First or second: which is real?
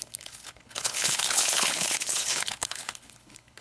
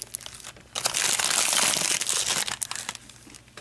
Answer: second